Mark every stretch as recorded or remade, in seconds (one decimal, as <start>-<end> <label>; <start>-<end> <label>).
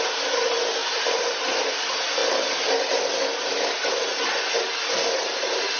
0.0-0.8 recorded; 0.8-1.4 remade; 1.4-5.8 recorded